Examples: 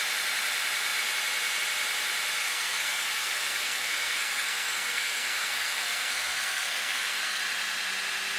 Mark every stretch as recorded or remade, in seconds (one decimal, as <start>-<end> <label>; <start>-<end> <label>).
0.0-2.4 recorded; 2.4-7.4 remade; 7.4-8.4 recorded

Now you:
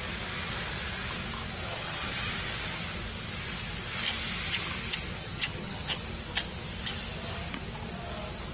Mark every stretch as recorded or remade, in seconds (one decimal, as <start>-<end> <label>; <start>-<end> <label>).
0.0-1.7 recorded; 1.7-2.3 remade; 2.3-5.2 recorded; 5.2-6.0 remade; 6.0-8.5 recorded

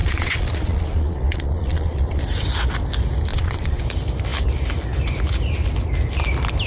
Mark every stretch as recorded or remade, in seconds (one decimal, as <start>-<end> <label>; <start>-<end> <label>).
0.0-2.2 remade; 2.2-3.3 recorded; 3.3-3.8 remade; 3.8-6.7 recorded

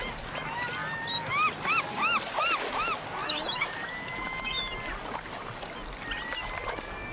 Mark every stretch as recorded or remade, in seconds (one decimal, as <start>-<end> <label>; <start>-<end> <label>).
0.0-3.2 recorded; 3.2-4.6 remade; 4.6-7.1 recorded